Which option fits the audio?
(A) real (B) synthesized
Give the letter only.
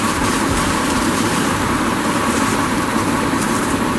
B